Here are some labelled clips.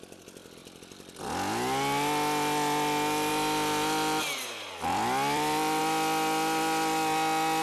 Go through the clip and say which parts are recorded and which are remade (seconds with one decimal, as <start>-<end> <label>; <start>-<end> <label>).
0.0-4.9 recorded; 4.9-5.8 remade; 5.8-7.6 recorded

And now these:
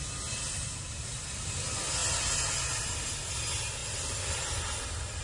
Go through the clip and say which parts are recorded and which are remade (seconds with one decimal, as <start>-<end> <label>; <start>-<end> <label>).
0.0-5.2 recorded

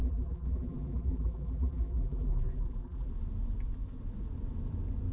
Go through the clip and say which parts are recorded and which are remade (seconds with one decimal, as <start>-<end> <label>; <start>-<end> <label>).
0.0-3.1 remade; 3.1-5.1 recorded